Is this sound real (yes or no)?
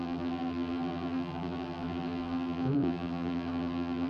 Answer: no